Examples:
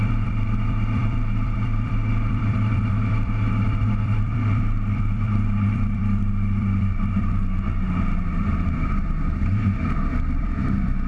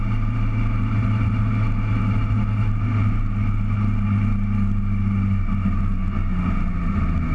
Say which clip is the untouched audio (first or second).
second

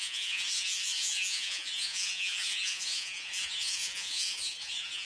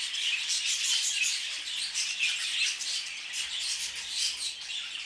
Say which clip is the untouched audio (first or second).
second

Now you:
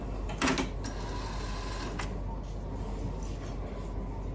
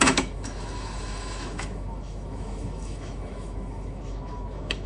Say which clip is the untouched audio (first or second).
first